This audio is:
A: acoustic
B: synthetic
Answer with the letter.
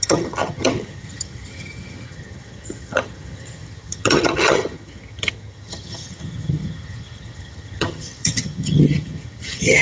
B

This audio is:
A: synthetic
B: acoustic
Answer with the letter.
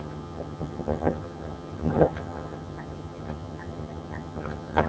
A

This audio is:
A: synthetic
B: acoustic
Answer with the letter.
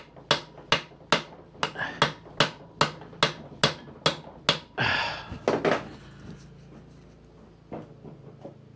B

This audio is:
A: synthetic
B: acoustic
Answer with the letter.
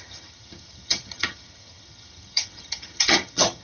A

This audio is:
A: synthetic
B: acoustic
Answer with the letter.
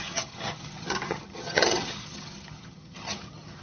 A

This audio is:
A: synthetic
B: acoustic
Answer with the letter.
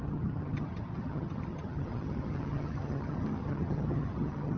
A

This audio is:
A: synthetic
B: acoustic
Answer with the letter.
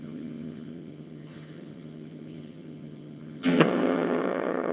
A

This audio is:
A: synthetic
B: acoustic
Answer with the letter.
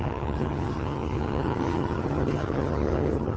A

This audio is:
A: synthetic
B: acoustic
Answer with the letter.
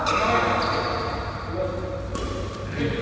B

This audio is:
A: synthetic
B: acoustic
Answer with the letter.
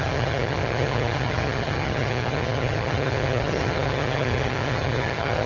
A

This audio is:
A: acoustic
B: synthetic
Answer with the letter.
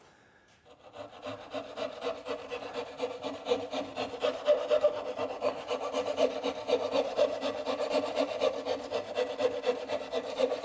A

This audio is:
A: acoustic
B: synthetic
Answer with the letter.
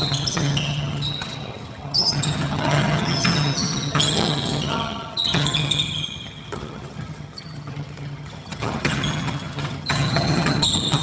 B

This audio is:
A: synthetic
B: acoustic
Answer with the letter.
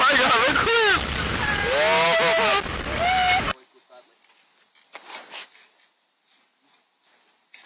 B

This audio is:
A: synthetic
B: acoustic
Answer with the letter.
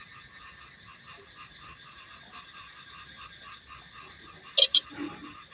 B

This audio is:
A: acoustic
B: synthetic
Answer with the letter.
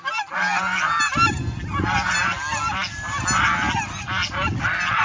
A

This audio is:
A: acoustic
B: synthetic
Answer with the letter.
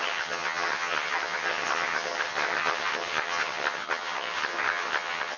B